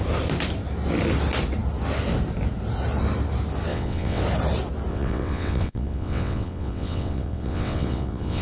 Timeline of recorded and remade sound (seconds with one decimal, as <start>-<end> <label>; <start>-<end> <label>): 0.0-3.7 recorded; 3.7-4.2 remade; 4.2-4.9 recorded; 4.9-8.4 remade